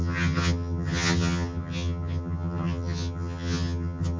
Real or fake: fake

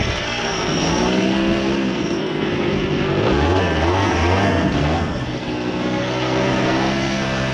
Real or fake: fake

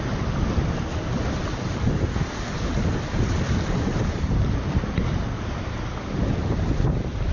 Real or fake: real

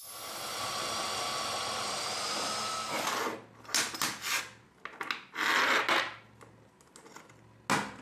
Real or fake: real